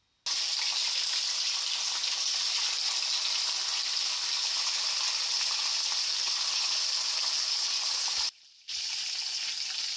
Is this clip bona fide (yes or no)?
yes